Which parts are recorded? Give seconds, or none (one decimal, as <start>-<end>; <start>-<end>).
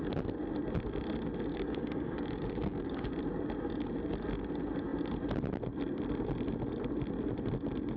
0.0-1.5; 3.1-8.0